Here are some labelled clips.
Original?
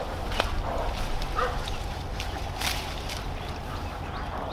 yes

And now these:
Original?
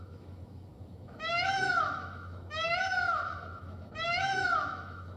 no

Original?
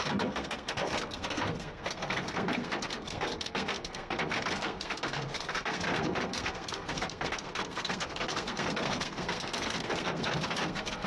no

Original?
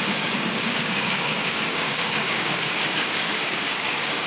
no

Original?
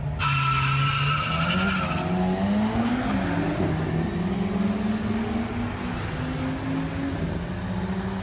yes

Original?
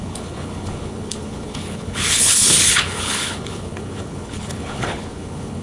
no